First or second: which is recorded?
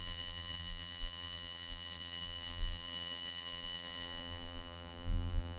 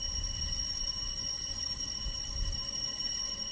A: second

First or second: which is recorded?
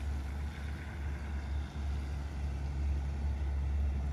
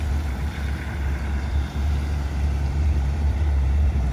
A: first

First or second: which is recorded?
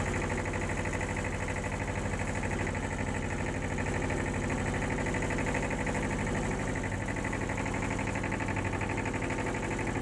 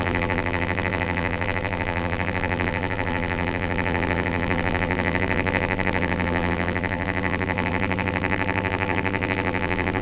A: first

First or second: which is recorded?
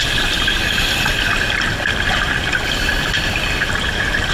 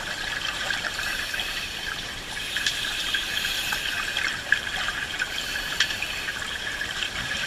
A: first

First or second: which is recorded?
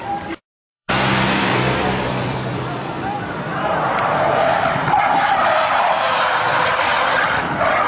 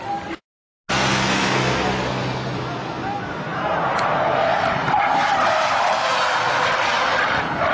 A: second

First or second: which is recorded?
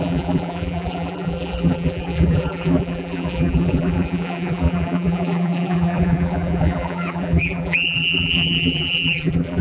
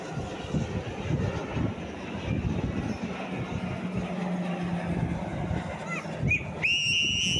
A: second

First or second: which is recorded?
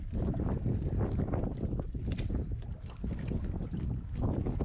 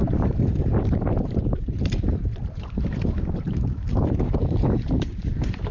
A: first